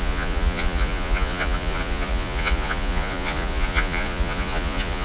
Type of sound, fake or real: fake